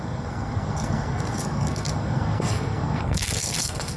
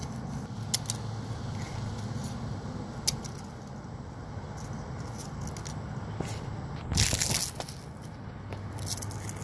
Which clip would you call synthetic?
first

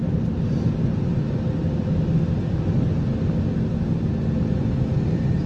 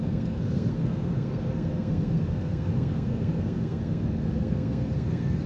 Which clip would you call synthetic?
second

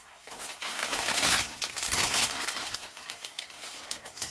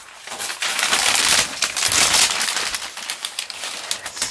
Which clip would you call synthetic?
first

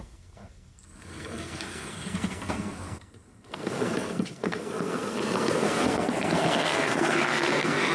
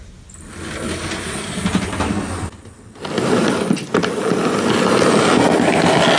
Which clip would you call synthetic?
first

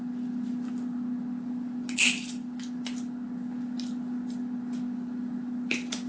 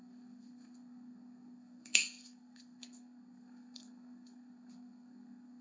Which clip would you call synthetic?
second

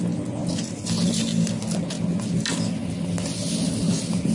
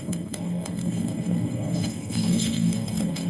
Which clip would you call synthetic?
second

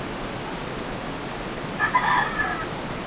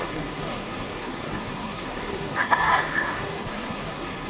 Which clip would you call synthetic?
second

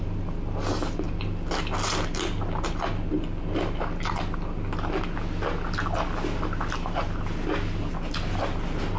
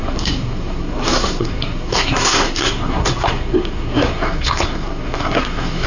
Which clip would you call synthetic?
second